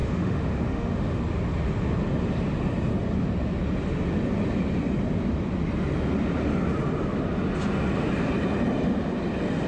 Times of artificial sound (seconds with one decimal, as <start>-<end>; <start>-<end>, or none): 0.0-1.2